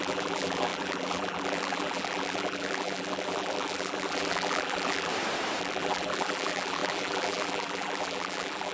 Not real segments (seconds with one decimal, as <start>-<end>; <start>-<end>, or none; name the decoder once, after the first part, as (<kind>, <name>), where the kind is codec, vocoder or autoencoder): 0.0-5.1 (vocoder, BigVGAN v2); 5.6-8.7